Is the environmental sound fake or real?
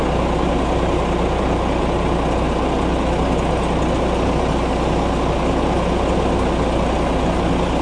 real